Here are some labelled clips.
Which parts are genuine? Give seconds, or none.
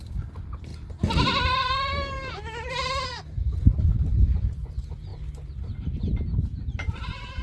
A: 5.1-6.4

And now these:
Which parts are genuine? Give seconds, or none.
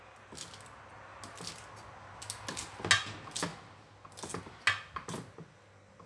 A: 0.0-6.1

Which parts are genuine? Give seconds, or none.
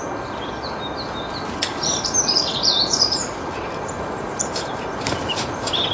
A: 0.0-1.7; 4.9-5.9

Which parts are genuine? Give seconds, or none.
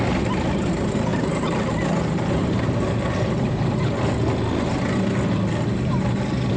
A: 0.0-1.1; 3.8-6.6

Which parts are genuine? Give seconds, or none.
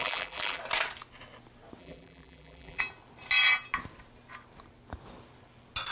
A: 0.6-1.8; 2.8-5.9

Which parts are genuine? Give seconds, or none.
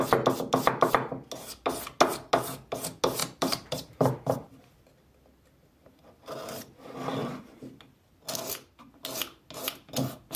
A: 0.0-3.2; 4.5-7.2; 7.8-10.4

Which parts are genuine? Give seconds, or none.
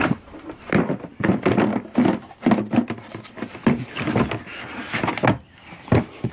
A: 4.5-6.3